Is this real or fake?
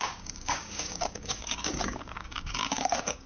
fake